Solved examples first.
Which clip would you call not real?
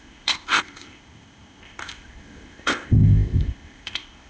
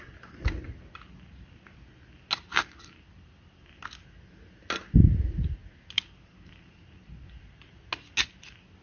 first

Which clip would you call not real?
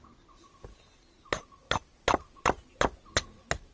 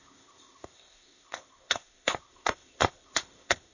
second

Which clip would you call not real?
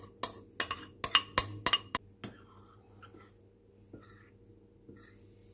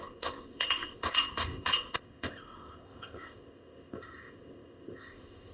second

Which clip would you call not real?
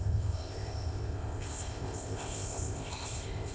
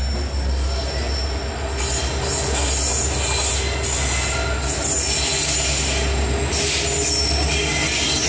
first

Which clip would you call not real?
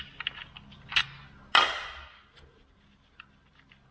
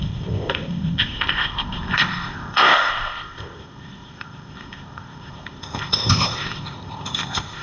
second